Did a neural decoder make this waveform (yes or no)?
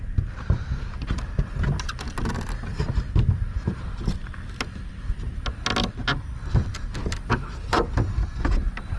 no